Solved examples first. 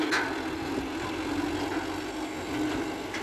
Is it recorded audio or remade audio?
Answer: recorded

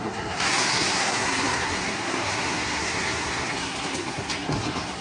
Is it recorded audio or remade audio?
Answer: remade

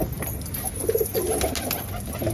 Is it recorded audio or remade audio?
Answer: recorded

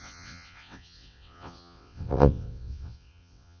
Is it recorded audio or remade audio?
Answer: remade